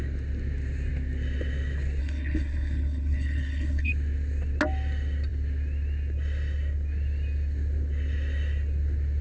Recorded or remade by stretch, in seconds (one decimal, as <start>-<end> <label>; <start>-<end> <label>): 0.0-2.0 recorded; 2.0-3.9 remade; 3.9-9.2 recorded